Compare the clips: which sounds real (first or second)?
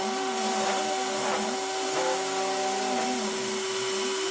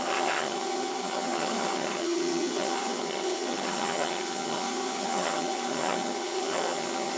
first